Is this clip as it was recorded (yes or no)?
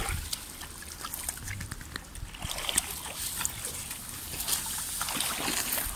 yes